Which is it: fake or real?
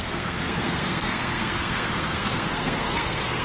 fake